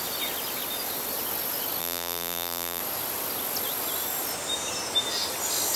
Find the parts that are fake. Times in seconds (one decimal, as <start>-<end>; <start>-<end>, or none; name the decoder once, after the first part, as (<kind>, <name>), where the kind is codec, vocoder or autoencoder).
1.8-2.8 (vocoder, BigVGAN v2)